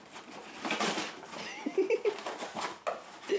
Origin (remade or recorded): recorded